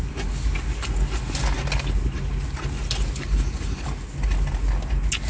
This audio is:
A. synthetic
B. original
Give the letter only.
B